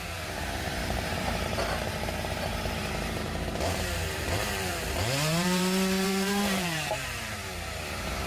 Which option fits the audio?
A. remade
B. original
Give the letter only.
A